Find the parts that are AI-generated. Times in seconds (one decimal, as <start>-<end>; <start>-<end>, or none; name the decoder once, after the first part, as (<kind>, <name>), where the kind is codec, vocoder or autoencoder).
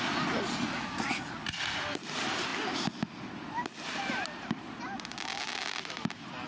none